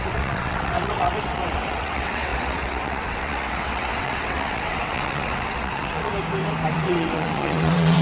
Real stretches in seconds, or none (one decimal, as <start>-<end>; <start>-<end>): 6.1-6.7